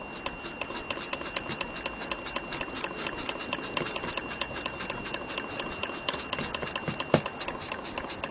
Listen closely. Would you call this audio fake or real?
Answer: real